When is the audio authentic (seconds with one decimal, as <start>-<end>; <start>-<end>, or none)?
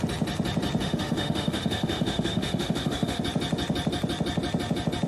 0.0-0.8; 3.2-5.1